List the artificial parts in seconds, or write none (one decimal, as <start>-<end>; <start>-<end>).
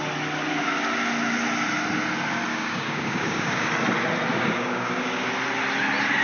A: 2.5-3.7; 4.3-5.3